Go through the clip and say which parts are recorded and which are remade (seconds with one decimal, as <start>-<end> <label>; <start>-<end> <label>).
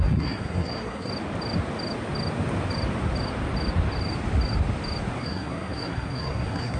0.0-1.1 remade; 1.1-5.2 recorded; 5.2-6.8 remade